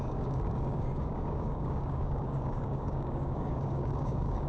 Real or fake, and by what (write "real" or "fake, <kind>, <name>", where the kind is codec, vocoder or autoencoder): fake, codec, DAC